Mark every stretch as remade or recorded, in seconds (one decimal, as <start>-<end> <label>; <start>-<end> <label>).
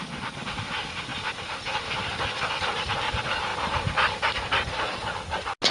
0.0-5.7 recorded